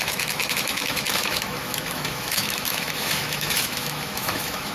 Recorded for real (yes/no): no